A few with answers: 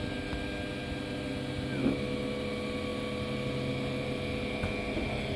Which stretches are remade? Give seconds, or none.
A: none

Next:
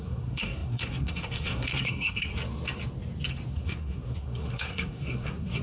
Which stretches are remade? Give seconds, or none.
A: 0.0-2.3 (codec, SNAC); 3.5-5.6

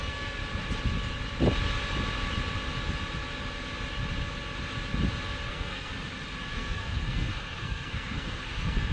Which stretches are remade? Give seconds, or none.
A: 0.0-0.4 (codec, SNAC); 5.5-5.9; 6.5-8.9

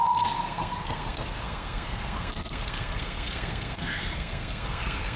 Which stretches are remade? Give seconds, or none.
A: 0.0-5.2 (codec, SNAC)

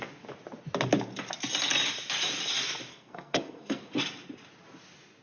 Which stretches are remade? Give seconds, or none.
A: 2.9-3.8 (codec, SNAC)

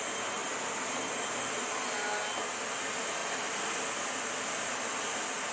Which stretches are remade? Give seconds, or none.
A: none

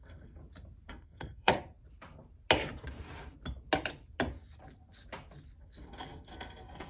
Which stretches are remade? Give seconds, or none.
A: 0.0-0.4 (codec, SNAC); 0.9-1.5; 5.6-6.9

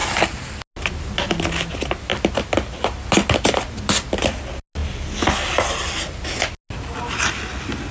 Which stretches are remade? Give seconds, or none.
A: none